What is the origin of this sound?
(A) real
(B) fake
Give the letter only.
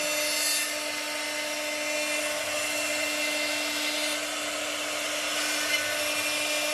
A